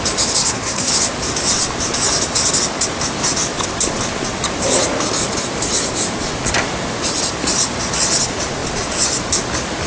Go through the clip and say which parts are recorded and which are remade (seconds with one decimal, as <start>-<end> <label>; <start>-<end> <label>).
0.0-0.4 recorded; 0.4-0.9 remade; 0.9-9.9 recorded